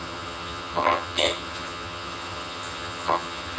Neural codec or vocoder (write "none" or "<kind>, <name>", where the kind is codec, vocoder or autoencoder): vocoder, HiFi-GAN